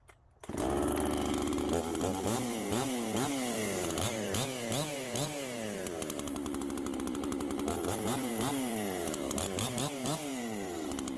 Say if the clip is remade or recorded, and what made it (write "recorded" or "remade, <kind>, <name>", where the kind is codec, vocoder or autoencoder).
remade, vocoder, BigVGAN v2